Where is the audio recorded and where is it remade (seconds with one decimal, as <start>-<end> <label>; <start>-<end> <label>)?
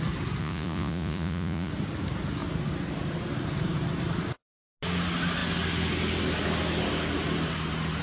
0.0-0.4 recorded; 0.4-1.7 remade; 1.7-8.0 recorded